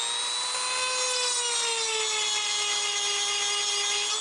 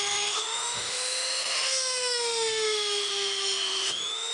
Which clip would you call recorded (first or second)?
first